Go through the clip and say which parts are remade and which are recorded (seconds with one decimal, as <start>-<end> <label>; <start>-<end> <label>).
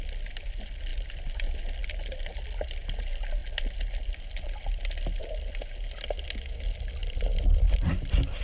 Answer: 0.0-7.0 recorded; 7.0-8.4 remade